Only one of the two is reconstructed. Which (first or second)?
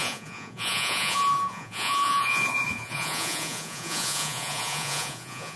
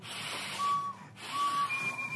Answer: first